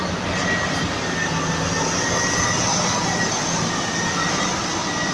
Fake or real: real